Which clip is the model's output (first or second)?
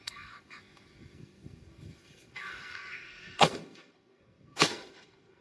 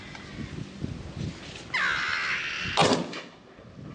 first